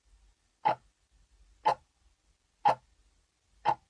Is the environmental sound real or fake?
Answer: real